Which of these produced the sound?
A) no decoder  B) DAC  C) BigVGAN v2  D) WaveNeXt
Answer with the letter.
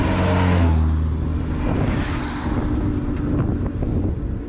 A